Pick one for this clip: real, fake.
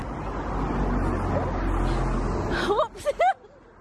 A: real